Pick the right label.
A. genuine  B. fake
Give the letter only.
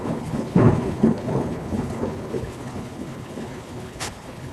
B